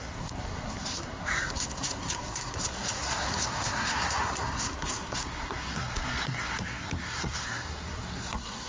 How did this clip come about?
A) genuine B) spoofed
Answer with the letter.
B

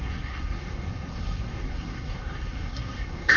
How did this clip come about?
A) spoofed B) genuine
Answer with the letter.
A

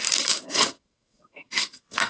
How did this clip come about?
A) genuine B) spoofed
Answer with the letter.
B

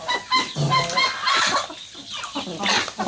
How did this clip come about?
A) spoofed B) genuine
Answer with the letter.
B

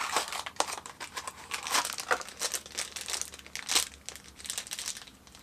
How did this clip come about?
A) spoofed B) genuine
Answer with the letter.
B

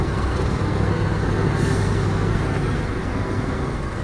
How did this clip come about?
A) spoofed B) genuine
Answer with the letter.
A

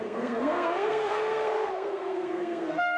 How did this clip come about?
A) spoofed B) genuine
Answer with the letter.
A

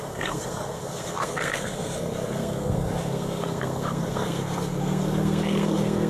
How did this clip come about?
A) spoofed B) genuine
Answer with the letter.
A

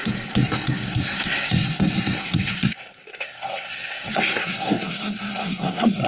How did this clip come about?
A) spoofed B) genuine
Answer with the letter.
A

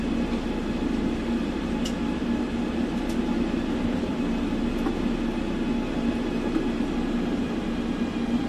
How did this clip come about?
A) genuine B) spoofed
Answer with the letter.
A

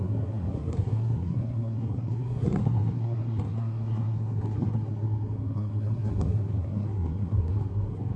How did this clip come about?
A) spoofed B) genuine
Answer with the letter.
A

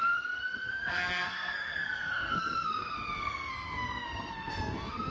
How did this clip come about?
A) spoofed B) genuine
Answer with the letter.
A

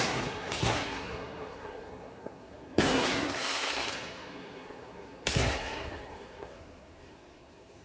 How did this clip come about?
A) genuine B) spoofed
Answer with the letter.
B